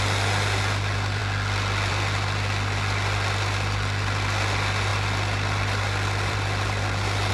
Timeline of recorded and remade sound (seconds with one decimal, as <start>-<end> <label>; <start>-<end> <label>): 0.0-4.9 recorded; 4.9-7.3 remade